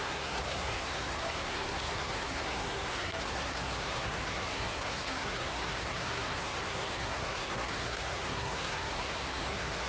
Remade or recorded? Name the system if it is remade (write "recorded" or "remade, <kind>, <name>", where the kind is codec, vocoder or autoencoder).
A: remade, codec, SNAC